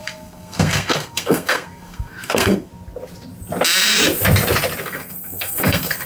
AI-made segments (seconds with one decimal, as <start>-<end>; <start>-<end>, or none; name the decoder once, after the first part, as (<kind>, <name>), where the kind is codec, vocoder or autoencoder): 0.0-2.7 (codec, SNAC); 4.8-6.1